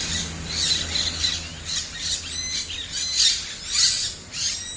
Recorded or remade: recorded